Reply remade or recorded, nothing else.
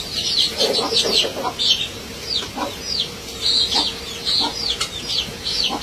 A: recorded